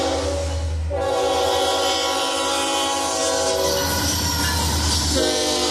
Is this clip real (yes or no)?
yes